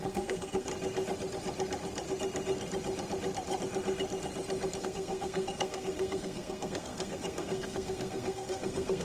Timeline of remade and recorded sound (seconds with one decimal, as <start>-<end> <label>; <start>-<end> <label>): 0.0-0.7 remade; 0.7-4.8 recorded; 4.8-9.0 remade